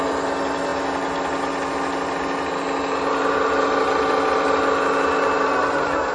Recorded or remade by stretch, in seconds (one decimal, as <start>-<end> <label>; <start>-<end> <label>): 0.0-6.1 recorded